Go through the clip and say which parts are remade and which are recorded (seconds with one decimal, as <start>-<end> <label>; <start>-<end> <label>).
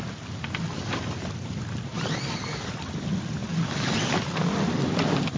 0.0-5.4 recorded